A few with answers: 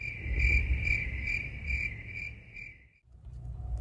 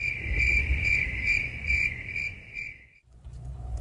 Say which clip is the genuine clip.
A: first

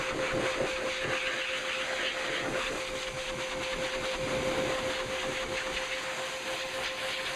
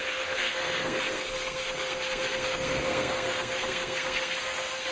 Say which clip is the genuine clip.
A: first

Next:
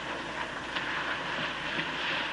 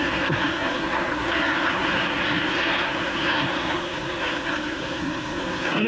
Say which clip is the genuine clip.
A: first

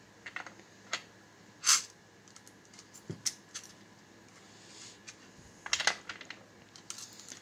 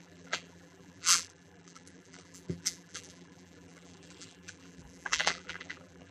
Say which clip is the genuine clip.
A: first